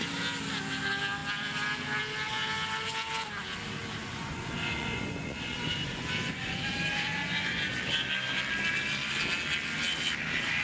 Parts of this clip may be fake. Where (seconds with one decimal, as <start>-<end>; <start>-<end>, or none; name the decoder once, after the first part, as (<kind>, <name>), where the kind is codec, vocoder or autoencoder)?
4.0-7.7 (vocoder, Vocos)